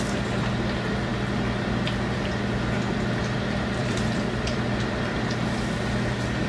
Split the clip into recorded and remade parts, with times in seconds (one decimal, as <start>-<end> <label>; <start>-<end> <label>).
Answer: 0.0-3.8 recorded; 3.8-5.1 remade; 5.1-6.5 recorded